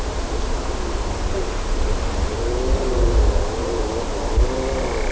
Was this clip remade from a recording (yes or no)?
yes